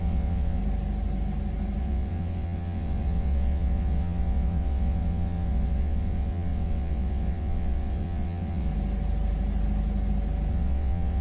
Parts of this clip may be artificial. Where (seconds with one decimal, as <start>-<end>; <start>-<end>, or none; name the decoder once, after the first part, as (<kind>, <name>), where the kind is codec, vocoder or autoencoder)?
0.0-0.6 (vocoder, WaveNeXt); 1.8-8.7; 10.5-11.2